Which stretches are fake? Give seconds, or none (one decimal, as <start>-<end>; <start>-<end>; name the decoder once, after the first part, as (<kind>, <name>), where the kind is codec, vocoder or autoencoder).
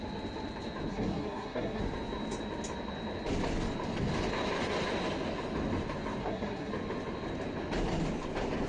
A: 0.9-1.8 (codec, SNAC); 6.2-6.7